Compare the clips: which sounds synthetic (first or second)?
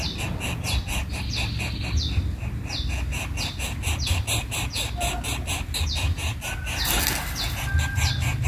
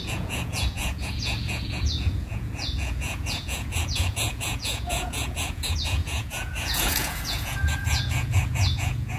second